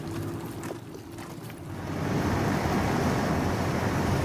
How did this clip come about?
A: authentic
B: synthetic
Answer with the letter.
A